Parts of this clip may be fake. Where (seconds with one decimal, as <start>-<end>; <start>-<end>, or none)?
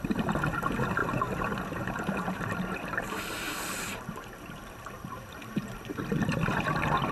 1.0-5.3